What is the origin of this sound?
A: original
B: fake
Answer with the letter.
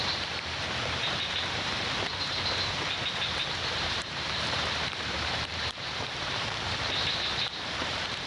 B